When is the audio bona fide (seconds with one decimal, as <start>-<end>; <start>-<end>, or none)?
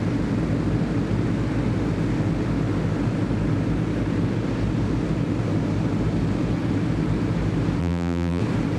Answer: 0.0-7.8; 8.4-8.8